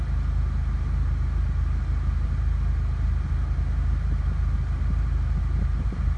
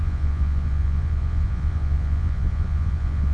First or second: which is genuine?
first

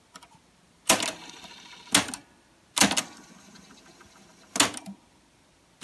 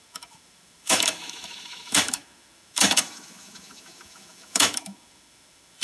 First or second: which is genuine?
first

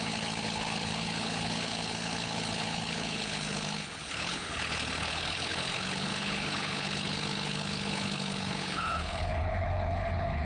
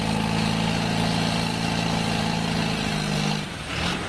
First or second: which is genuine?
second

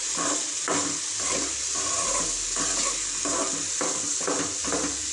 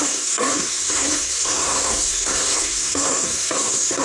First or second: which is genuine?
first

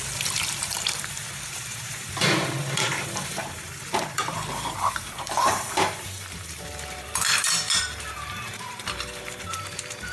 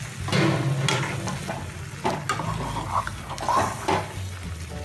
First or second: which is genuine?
second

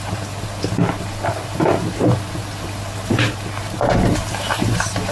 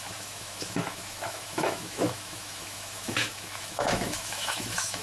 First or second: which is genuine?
first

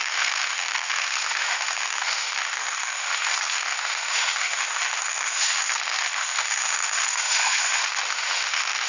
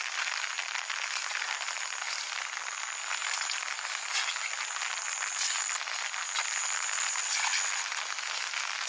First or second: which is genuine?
second